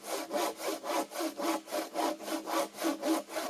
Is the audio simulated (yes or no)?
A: no